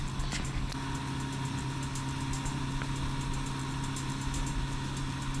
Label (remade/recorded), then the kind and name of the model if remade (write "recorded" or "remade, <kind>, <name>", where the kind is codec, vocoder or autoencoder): recorded